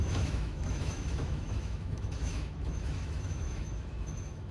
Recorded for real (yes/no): no